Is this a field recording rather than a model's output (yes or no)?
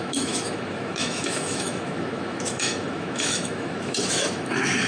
no